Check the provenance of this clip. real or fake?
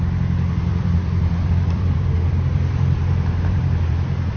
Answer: fake